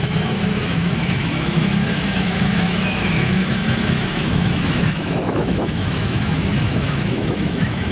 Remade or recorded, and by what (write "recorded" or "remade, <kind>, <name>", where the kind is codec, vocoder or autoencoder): remade, autoencoder, DAC-VAE